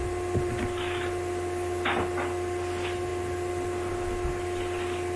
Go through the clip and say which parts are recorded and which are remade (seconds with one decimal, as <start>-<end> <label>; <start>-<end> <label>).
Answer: 0.0-5.2 recorded